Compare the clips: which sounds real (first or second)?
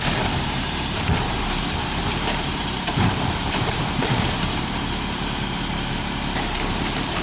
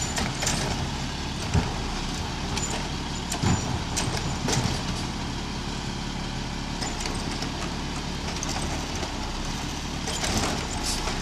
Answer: second